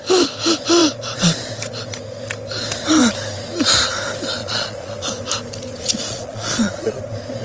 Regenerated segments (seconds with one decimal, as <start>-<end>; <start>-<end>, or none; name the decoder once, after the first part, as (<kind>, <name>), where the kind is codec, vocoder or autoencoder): 4.4-5.1 (vocoder, Vocos); 5.8-7.0